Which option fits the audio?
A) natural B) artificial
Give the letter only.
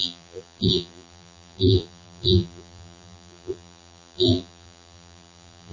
B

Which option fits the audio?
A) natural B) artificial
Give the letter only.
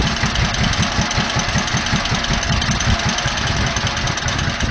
A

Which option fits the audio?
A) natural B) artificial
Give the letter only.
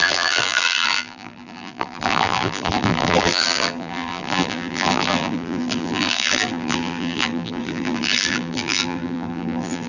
B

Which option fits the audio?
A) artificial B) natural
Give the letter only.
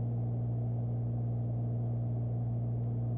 B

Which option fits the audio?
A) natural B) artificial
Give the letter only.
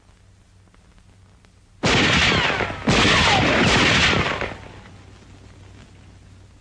A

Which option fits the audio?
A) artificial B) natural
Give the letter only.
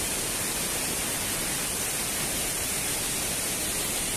B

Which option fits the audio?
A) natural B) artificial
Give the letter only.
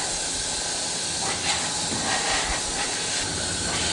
A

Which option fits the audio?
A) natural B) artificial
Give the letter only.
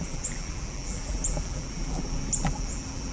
B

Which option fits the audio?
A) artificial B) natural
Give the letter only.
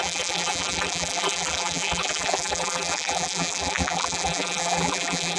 A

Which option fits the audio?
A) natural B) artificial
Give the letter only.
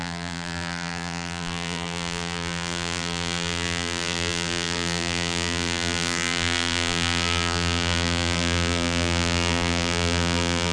B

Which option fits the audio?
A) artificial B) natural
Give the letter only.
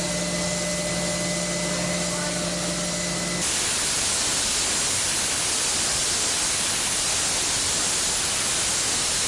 B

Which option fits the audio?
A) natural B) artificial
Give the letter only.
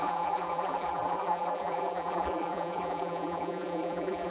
B